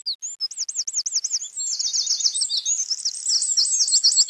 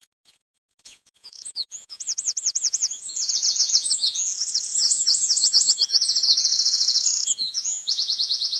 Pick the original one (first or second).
first